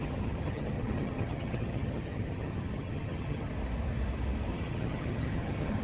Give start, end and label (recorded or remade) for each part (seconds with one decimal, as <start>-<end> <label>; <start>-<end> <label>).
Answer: 0.0-3.5 remade; 3.5-4.5 recorded; 4.5-5.8 remade